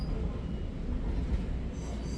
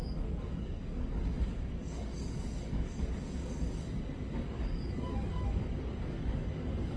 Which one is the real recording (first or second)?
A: first